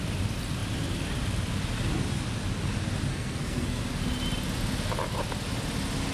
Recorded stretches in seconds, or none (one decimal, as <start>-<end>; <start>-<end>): 0.0-3.1; 3.8-6.1